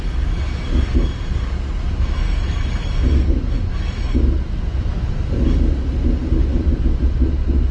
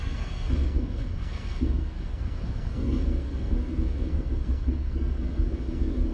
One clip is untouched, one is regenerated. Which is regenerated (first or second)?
second